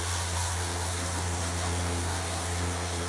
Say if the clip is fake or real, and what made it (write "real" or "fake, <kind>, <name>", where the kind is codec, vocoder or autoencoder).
fake, codec, SNAC